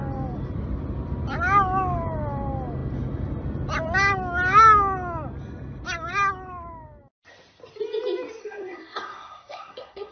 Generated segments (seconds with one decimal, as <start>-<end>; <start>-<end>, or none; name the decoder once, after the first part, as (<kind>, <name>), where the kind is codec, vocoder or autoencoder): 8.4-10.1 (codec, SNAC)